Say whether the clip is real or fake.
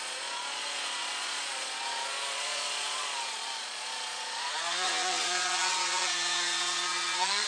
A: fake